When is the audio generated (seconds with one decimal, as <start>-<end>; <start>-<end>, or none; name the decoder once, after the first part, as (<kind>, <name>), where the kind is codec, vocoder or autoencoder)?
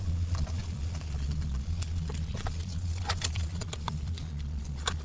0.0-5.0 (vocoder, Vocos)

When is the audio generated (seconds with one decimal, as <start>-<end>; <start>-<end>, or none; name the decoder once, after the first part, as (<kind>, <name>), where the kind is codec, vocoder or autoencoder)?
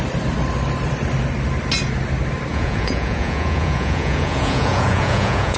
2.5-5.6 (vocoder, Vocos)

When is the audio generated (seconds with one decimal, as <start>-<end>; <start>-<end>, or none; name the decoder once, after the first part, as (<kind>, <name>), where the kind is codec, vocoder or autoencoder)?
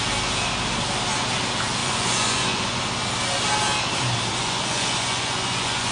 1.8-2.8 (vocoder, Vocos); 4.4-5.9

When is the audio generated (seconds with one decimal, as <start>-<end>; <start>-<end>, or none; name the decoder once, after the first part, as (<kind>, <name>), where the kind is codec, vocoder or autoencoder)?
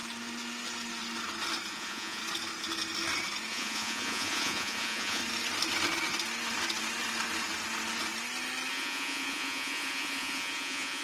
1.7-2.2 (vocoder, Vocos); 3.5-5.2; 8.7-11.0